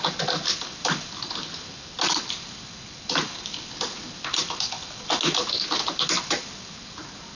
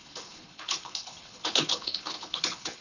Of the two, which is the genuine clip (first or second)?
first